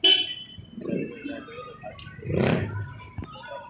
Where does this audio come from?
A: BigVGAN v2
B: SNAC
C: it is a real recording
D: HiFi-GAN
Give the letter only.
C